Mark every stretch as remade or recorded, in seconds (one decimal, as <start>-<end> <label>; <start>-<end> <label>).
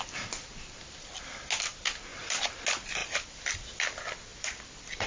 0.0-2.1 recorded; 2.1-2.6 remade; 2.6-3.0 recorded; 3.0-3.7 remade; 3.7-4.3 recorded; 4.3-5.1 remade